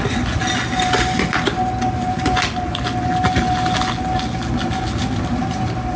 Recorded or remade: recorded